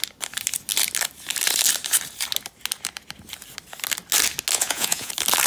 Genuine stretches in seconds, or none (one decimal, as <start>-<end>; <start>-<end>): 0.0-4.5; 5.1-5.5